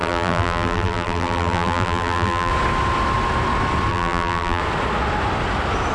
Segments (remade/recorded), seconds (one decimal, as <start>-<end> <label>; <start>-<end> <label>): 0.0-2.5 remade; 2.5-3.9 recorded; 3.9-4.6 remade; 4.6-5.9 recorded